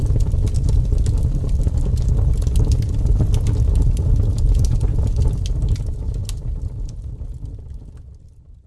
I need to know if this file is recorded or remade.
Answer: recorded